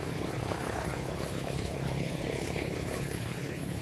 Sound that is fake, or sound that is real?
fake